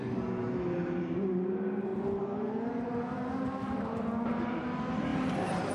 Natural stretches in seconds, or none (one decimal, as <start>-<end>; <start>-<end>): 0.0-5.7